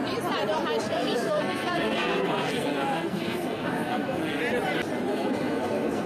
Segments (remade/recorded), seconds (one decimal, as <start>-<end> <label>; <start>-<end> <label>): 0.0-0.8 recorded; 0.8-4.4 remade; 4.4-5.1 recorded; 5.1-6.1 remade